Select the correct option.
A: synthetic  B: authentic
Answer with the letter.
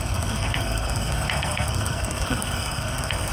A